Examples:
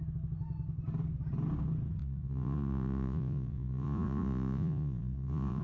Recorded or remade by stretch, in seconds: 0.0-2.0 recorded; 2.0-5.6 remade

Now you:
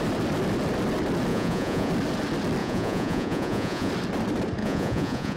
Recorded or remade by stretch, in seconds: 0.0-1.3 recorded; 1.3-1.9 remade; 1.9-2.6 recorded; 2.6-3.9 remade; 3.9-4.6 recorded; 4.6-5.4 remade

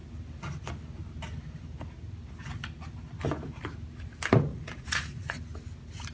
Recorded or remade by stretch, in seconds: 0.0-4.5 recorded; 4.5-5.4 remade; 5.4-6.1 recorded